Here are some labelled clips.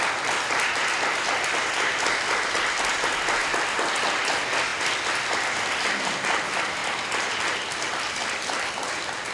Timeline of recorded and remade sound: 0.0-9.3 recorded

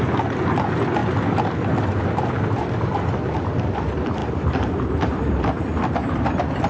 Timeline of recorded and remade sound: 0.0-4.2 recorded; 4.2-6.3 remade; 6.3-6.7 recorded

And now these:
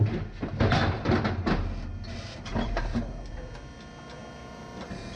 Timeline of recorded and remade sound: 0.0-2.5 recorded; 2.5-3.3 remade; 3.3-5.2 recorded

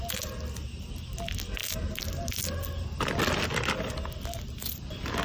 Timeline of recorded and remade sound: 0.0-5.2 recorded